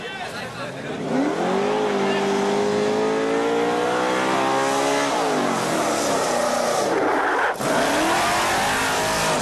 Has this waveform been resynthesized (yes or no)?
no